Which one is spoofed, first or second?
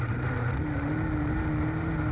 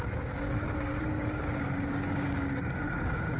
second